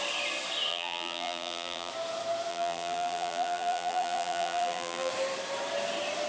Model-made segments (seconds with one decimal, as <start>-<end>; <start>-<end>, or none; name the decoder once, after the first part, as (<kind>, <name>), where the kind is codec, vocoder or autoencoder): 0.7-1.9 (vocoder, BigVGAN v2); 2.5-5.1